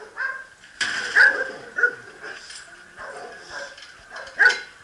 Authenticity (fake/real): real